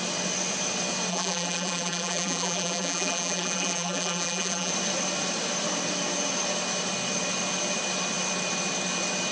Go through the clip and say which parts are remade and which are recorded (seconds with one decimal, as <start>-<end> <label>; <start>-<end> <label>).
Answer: 0.0-1.1 recorded; 1.1-4.7 remade; 4.7-9.3 recorded